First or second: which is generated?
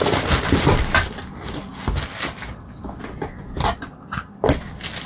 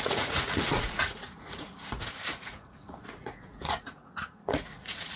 second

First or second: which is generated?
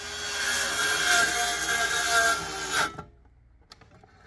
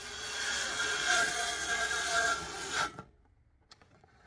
second